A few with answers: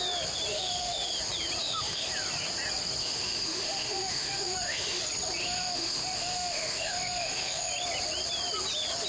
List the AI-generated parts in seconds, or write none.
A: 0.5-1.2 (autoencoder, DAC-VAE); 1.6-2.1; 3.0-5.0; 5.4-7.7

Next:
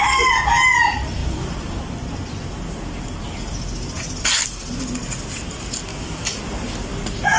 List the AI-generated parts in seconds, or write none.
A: 5.9-6.4 (autoencoder, DAC-VAE)

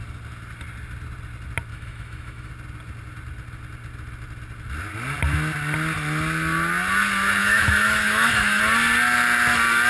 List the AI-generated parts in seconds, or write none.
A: 1.7-2.5 (autoencoder, DAC-VAE); 7.4-8.6

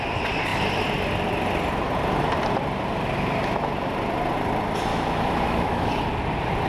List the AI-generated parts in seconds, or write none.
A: 4.9-6.0 (autoencoder, DAC-VAE)

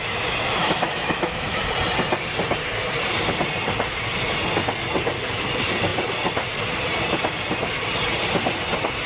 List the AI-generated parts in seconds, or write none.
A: 0.6-1.6 (autoencoder, DAC-VAE)

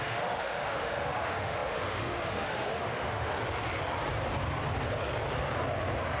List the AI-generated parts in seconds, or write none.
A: 0.0-3.3 (autoencoder, DAC-VAE)